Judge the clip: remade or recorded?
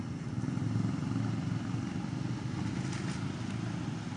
recorded